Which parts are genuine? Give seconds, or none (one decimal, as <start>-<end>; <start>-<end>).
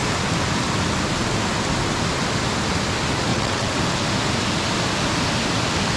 0.0-3.3; 3.8-6.0